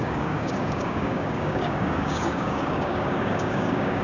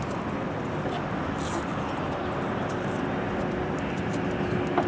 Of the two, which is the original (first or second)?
second